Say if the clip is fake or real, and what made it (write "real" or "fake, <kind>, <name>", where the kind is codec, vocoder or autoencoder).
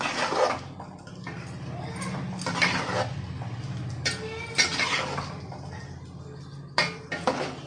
real